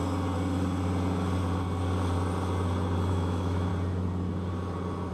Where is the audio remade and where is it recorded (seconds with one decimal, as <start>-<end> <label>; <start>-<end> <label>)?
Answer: 0.0-3.1 recorded; 3.1-3.7 remade; 3.7-5.1 recorded